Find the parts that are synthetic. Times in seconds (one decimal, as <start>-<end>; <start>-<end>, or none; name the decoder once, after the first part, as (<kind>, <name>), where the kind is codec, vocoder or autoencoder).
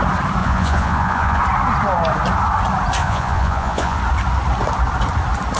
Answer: 0.4-1.4 (vocoder, Vocos); 3.0-4.0